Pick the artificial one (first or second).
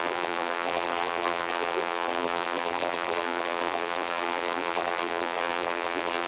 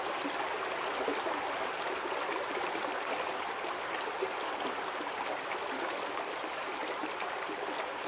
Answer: first